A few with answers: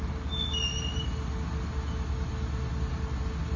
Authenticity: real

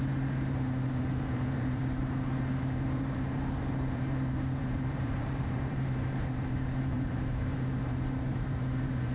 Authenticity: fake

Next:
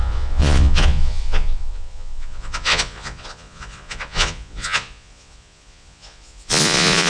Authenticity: fake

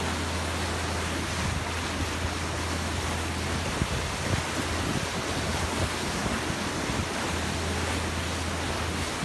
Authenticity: real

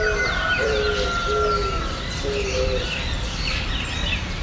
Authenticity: real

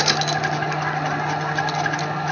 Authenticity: real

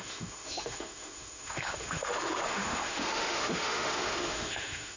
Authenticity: fake